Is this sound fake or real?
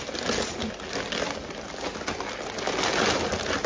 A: real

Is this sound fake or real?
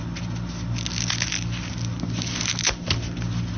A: real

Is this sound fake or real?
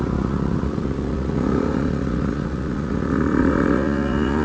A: fake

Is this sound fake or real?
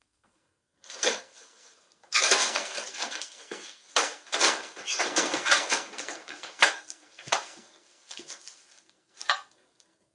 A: fake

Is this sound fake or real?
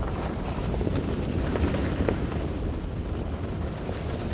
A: real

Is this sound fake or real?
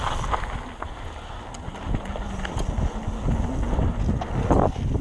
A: real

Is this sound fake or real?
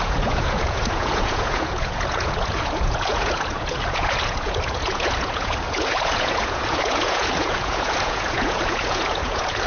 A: fake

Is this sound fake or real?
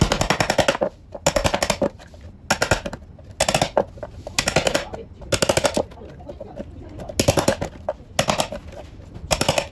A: real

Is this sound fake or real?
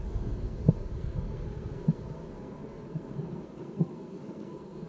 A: fake